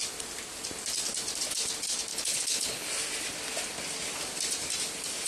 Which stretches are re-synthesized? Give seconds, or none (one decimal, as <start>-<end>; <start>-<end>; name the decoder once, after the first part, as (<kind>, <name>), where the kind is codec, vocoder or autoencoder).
2.1-2.9 (codec, HILCodec)